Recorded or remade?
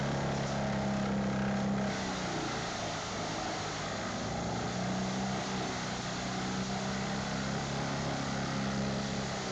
recorded